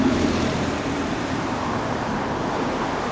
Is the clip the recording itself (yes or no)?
no